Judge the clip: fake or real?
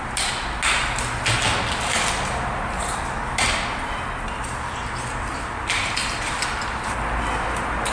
real